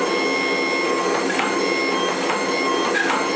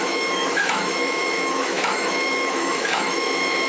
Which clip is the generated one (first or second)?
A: second